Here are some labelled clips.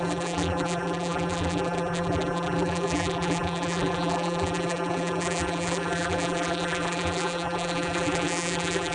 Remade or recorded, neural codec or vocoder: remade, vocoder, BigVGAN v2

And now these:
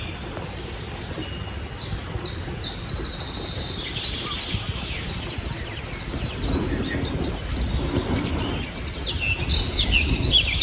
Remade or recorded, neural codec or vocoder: recorded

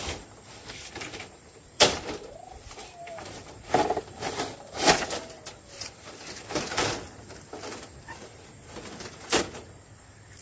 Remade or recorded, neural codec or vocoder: remade, vocoder, BigVGAN v2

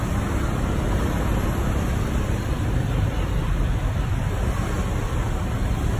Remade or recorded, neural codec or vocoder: recorded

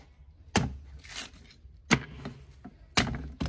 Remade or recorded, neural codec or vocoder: recorded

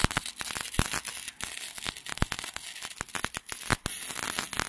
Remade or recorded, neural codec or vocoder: recorded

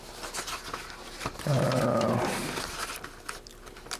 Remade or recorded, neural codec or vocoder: recorded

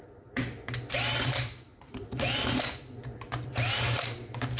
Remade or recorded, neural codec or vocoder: remade, vocoder, BigVGAN v2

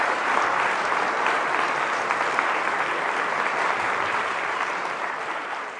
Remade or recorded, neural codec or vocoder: remade, vocoder, BigVGAN v2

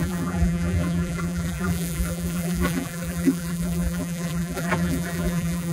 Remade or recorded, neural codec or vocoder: remade, vocoder, BigVGAN v2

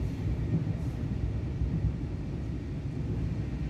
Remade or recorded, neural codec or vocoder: recorded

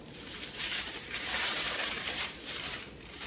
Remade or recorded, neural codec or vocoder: remade, vocoder, BigVGAN v2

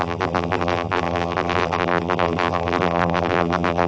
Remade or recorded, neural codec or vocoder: remade, vocoder, BigVGAN v2